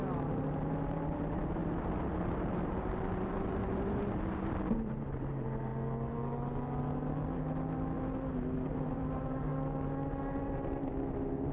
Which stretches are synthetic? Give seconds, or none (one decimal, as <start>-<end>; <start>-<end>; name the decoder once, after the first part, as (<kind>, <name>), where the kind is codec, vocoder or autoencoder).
0.0-1.6 (vocoder, BigVGAN v2); 2.5-5.7; 8.7-9.5